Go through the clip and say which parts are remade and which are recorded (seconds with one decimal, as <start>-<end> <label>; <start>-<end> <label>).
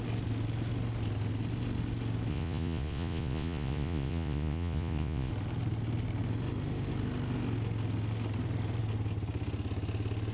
0.0-2.3 recorded; 2.3-5.3 remade; 5.3-10.3 recorded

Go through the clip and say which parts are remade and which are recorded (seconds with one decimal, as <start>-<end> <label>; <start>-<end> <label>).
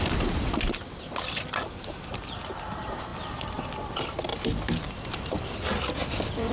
0.0-6.5 recorded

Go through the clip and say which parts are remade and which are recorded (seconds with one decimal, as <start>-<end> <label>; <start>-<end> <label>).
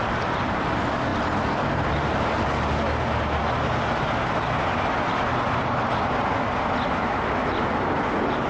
0.0-8.5 recorded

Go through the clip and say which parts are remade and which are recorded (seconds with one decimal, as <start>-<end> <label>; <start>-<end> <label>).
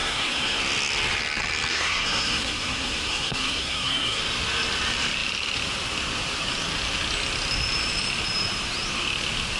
0.0-0.6 remade; 0.6-1.7 recorded; 1.7-4.2 remade; 4.2-9.6 recorded